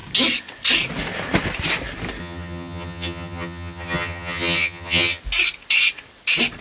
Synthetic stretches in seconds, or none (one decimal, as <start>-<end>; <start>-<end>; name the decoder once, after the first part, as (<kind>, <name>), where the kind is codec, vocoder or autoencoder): 2.2-5.2 (vocoder, HiFi-GAN)